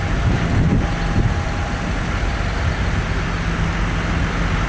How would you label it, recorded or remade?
recorded